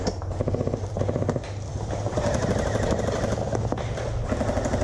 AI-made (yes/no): no